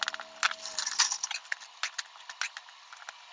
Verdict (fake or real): real